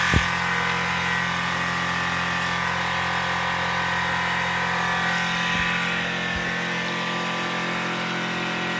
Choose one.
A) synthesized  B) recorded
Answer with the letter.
B